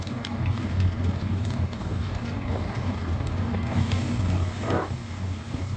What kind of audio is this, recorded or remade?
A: remade